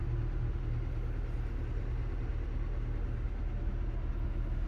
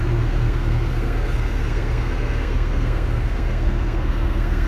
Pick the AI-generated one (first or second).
second